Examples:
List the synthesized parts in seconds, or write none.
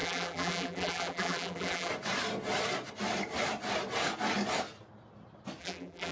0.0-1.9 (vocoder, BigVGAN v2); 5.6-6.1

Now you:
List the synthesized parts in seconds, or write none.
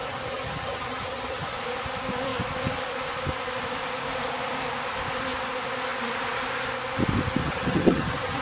0.0-1.5 (vocoder, HiFi-GAN); 7.4-8.4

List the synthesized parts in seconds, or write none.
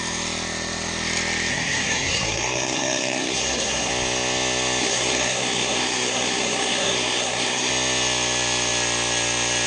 1.5-3.9 (codec, SNAC); 4.8-7.7